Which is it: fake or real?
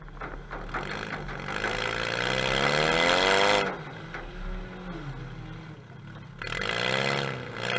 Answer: real